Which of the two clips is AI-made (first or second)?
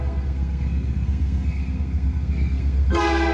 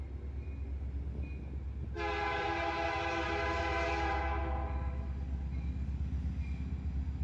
first